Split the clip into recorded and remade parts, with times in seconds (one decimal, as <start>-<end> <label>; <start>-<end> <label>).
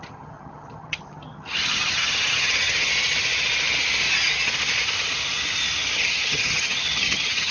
0.0-2.9 remade; 2.9-6.1 recorded; 6.1-7.5 remade